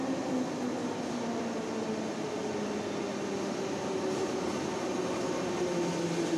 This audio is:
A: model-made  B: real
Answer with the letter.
B